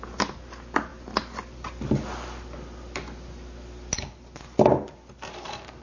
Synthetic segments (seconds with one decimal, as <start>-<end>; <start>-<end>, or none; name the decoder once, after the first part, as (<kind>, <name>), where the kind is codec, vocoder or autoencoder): none